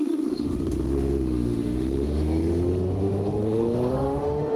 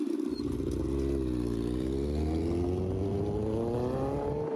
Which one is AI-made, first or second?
first